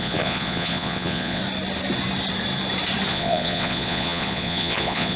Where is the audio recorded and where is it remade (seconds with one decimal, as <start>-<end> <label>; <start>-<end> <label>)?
0.0-1.4 remade; 1.4-3.1 recorded; 3.1-5.2 remade